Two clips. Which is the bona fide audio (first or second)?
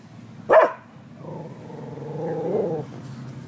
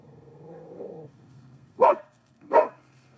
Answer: first